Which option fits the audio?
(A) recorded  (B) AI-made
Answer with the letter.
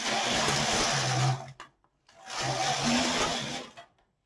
A